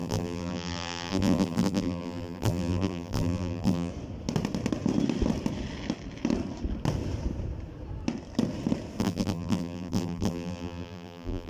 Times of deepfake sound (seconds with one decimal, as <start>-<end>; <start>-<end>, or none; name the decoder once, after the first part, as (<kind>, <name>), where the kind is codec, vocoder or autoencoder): 0.0-3.9 (vocoder, BigVGAN v2); 9.0-11.5